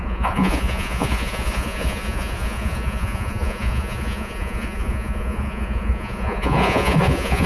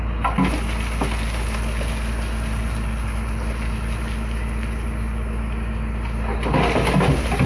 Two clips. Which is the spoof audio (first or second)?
first